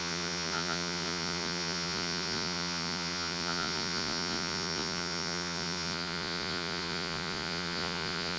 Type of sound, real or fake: fake